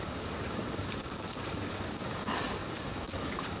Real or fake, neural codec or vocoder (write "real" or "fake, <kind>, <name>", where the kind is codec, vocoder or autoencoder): fake, codec, DAC